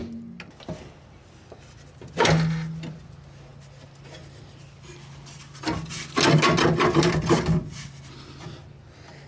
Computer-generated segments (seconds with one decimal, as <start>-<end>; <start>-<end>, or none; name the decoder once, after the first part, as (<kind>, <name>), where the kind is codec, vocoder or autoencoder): none

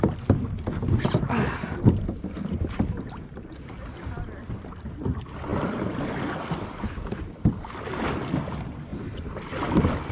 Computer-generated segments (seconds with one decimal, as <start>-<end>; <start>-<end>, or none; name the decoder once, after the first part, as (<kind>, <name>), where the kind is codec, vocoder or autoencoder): none

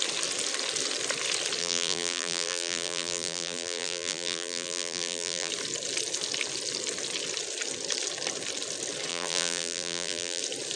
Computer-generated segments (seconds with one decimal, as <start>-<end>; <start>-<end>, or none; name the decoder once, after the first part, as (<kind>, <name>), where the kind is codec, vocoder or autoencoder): 1.6-5.5 (vocoder, BigVGAN v2); 9.1-10.4

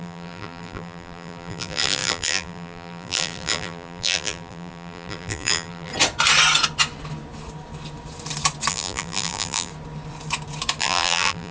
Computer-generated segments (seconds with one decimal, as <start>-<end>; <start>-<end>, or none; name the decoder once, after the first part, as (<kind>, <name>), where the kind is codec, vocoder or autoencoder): 0.0-5.9 (vocoder, BigVGAN v2); 8.7-9.7; 10.8-11.5

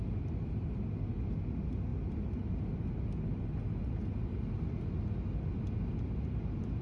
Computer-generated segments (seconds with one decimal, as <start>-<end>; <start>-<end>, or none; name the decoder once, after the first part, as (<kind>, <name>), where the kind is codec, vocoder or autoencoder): none

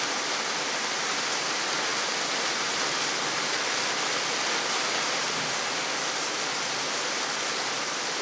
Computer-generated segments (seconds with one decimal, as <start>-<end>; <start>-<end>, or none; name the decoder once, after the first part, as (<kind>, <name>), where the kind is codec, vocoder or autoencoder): none

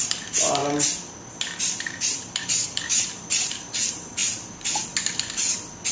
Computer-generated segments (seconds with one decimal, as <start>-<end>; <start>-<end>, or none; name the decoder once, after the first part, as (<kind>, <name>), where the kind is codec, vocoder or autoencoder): 0.0-0.6 (vocoder, BigVGAN v2); 1.6-4.2

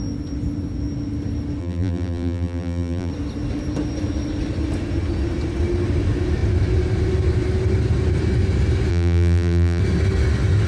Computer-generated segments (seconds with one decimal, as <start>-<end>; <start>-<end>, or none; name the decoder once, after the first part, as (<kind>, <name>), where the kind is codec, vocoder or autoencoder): 1.6-3.1 (vocoder, BigVGAN v2); 8.9-9.8